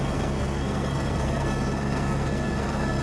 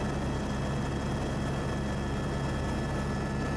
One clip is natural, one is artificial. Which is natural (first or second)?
second